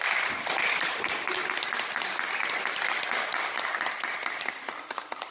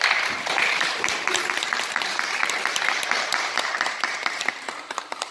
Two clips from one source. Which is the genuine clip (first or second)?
first